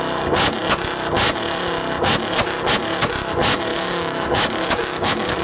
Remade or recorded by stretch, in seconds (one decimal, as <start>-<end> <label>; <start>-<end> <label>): 0.0-3.7 recorded; 3.7-5.4 remade